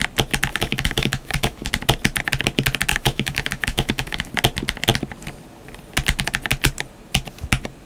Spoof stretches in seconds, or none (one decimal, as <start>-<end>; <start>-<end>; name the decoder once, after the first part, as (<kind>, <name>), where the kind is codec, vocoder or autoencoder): 0.5-1.7 (autoencoder, DAC-VAE); 2.9-4.3